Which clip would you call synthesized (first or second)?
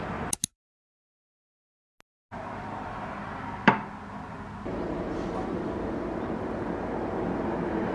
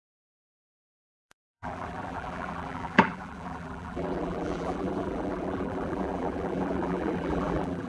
second